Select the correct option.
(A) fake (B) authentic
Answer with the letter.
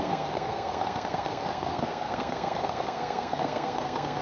A